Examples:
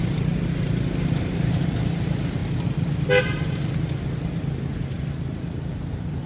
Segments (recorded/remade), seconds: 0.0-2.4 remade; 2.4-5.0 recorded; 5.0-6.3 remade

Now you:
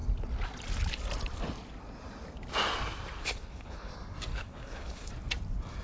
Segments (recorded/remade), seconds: 0.0-3.2 recorded; 3.2-3.9 remade; 3.9-4.3 recorded; 4.3-5.1 remade; 5.1-5.8 recorded

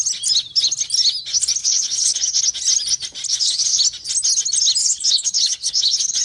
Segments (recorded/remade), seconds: 0.0-1.6 recorded; 1.6-2.4 remade; 2.4-3.3 recorded; 3.3-3.8 remade; 3.8-4.8 recorded; 4.8-6.2 remade